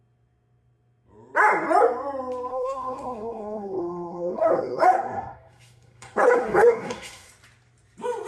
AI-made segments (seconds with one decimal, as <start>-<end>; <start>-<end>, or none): 2.5-7.3